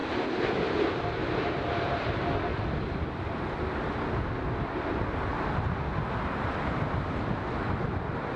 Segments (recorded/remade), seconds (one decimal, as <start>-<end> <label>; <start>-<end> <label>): 0.0-8.4 recorded